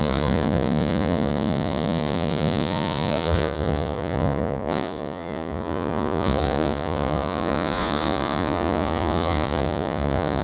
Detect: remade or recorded remade